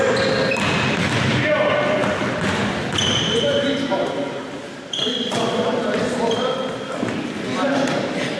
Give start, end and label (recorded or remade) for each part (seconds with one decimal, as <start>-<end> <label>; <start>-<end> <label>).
0.0-8.4 recorded